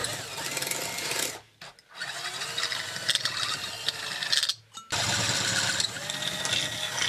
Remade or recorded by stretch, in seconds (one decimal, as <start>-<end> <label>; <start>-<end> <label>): 0.0-7.1 recorded